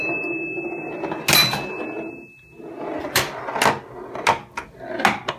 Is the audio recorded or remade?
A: recorded